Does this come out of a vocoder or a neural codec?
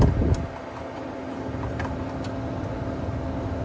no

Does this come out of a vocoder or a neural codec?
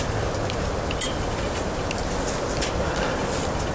no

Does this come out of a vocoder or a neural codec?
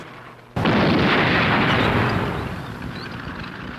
no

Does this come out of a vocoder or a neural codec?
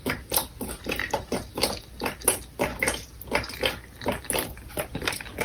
no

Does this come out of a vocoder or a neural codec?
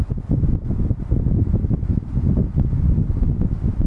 no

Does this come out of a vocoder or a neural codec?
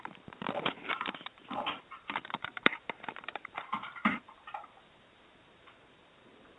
yes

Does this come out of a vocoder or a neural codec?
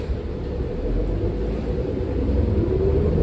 yes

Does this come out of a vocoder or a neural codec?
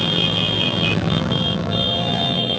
yes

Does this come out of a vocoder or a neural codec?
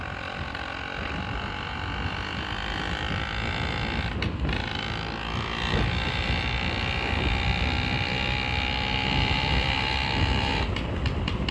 no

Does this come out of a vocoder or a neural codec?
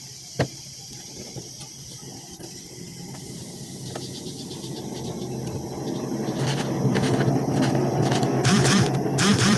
no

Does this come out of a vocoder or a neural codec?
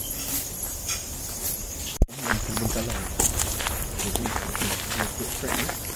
yes